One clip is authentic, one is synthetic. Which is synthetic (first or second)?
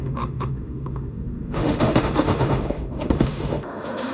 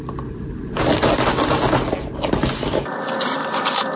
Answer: first